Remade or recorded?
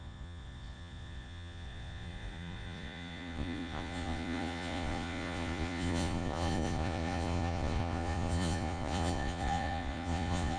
remade